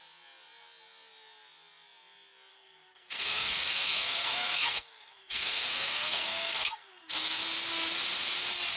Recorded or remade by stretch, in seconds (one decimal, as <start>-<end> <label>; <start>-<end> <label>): 0.0-2.5 recorded; 2.5-7.4 remade; 7.4-8.8 recorded